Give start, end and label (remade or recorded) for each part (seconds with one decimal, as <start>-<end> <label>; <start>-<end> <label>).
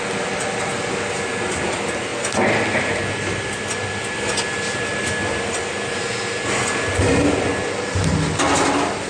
0.0-9.1 recorded